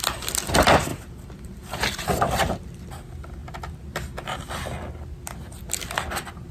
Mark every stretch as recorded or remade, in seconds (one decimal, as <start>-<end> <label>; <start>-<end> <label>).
0.0-0.9 recorded; 0.9-2.9 remade; 2.9-6.5 recorded